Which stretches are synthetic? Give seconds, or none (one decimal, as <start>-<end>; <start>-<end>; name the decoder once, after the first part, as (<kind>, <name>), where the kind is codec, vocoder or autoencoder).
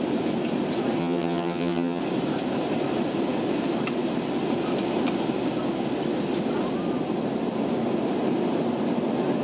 1.0-2.0 (vocoder, HiFi-GAN)